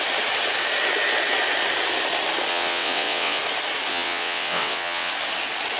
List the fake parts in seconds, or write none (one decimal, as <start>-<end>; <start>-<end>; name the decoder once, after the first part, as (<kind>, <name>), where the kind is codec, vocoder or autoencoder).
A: 2.5-3.4 (vocoder, WaveNeXt); 3.9-5.1